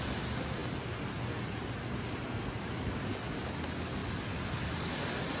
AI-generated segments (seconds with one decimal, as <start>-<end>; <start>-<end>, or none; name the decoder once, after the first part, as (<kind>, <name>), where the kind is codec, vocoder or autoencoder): none

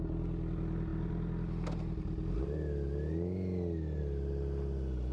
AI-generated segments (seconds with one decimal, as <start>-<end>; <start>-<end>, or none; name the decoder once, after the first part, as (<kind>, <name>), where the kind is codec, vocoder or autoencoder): none